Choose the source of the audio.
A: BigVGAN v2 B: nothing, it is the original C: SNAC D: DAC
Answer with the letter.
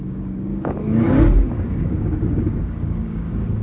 D